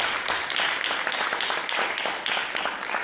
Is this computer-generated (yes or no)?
no